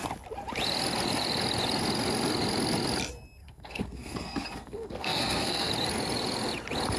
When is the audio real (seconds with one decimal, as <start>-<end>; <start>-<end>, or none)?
0.0-3.4; 5.7-7.0